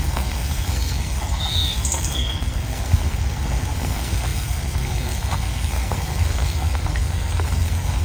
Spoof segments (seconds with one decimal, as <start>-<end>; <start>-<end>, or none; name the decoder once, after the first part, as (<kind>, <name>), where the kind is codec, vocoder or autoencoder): 0.0-8.0 (codec, SNAC)